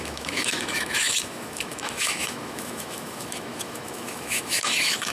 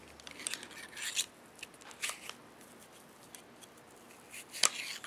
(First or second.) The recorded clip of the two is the second